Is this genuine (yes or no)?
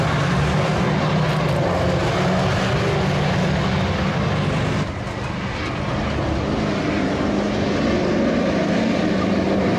yes